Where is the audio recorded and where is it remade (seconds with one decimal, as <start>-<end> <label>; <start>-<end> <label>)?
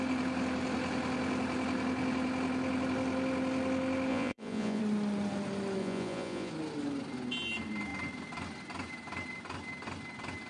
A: 0.0-4.1 recorded; 4.1-4.8 remade; 4.8-5.8 recorded; 5.8-6.5 remade; 6.5-10.5 recorded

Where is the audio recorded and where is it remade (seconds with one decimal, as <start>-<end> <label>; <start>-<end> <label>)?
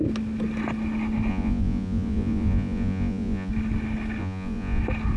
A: 0.0-1.3 recorded; 1.3-3.5 remade; 3.5-4.2 recorded; 4.2-4.8 remade; 4.8-5.2 recorded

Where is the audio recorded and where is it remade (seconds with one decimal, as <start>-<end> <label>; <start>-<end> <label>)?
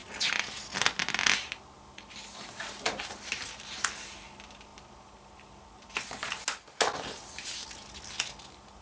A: 0.0-8.8 recorded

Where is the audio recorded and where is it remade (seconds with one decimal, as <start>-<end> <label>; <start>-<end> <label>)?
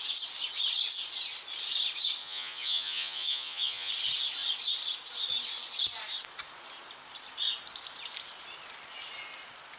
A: 0.0-2.2 recorded; 2.2-3.9 remade; 3.9-9.8 recorded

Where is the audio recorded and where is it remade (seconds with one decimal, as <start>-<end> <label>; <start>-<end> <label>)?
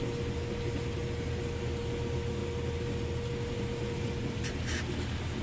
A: 0.0-5.4 recorded